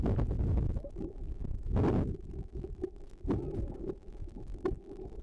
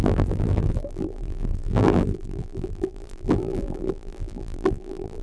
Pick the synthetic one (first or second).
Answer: second